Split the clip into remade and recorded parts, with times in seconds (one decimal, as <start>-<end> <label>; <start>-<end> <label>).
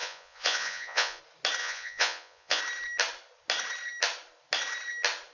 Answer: 0.0-1.2 remade; 1.2-1.6 recorded; 1.6-2.6 remade; 2.6-5.3 recorded